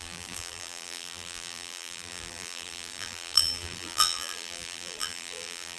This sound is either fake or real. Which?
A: fake